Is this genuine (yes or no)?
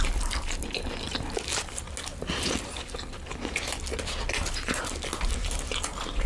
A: yes